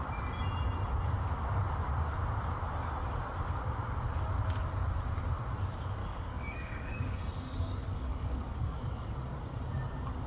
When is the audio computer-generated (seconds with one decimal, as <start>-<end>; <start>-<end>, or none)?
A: 6.0-7.2; 7.8-9.0